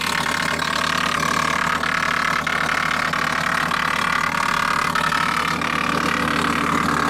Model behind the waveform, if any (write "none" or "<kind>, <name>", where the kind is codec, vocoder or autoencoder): none